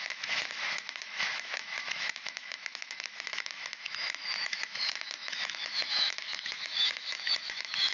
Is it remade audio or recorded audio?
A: remade